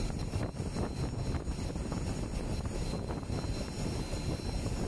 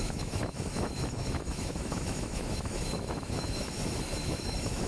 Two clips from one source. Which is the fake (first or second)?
second